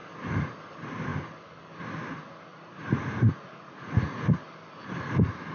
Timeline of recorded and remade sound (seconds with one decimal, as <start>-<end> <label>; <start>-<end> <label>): 0.0-2.5 recorded; 2.5-4.4 remade; 4.4-5.5 recorded